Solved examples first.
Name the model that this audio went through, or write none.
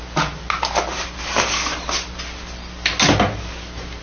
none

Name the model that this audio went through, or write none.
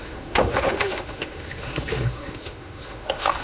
autoencoder, DAC-VAE